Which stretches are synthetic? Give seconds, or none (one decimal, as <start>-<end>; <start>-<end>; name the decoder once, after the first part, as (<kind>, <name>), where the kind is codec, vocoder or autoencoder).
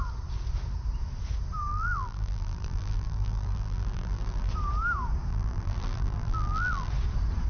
1.7-4.5 (vocoder, BigVGAN v2); 5.3-6.9